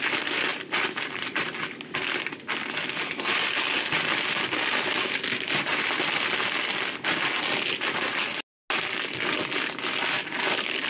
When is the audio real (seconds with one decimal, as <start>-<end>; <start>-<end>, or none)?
0.0-0.5; 2.3-10.9